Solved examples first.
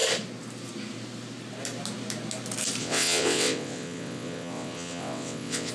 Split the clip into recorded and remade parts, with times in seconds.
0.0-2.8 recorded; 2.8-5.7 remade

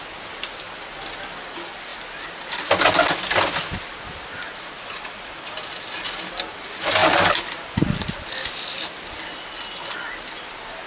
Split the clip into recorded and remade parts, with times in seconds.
0.0-10.9 recorded

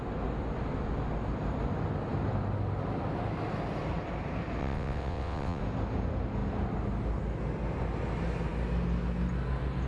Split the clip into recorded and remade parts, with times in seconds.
0.0-4.6 recorded; 4.6-5.6 remade; 5.6-9.9 recorded

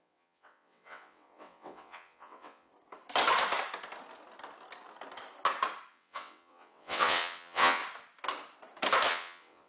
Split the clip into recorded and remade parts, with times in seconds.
0.0-2.7 remade; 2.7-5.9 recorded; 5.9-7.8 remade; 7.8-9.1 recorded; 9.1-9.7 remade

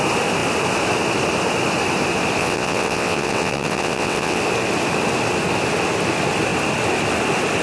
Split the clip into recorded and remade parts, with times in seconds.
0.0-2.4 recorded; 2.4-4.4 remade; 4.4-7.6 recorded

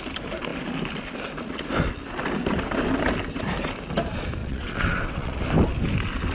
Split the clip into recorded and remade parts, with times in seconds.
0.0-4.4 recorded; 4.4-5.4 remade; 5.4-6.3 recorded